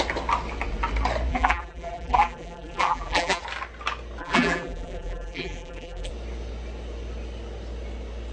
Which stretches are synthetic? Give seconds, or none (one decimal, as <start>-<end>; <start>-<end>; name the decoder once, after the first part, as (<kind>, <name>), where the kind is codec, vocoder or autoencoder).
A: 1.3-3.4 (vocoder, BigVGAN v2); 4.2-6.1